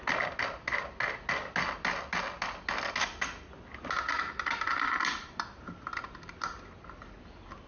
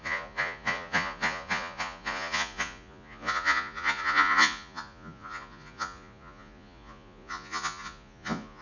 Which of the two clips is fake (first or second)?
second